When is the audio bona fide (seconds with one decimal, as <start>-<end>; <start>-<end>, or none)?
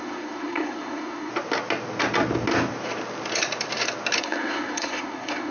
1.3-4.2